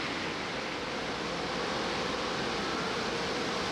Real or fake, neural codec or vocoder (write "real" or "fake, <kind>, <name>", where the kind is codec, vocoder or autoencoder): real